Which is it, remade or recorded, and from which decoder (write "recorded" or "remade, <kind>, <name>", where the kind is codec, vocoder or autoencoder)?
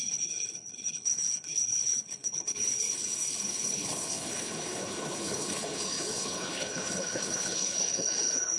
remade, codec, HILCodec